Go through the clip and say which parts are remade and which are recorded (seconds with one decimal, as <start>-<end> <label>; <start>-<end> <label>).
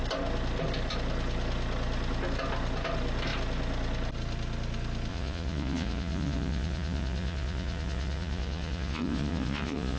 0.0-5.1 recorded; 5.1-10.0 remade